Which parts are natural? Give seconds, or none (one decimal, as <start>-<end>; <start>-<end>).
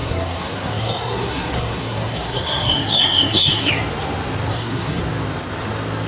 3.7-4.5; 5.0-6.1